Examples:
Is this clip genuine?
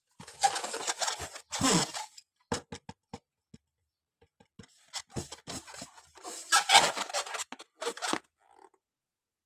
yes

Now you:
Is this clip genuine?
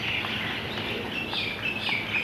yes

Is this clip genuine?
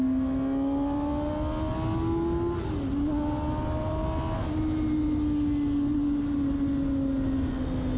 yes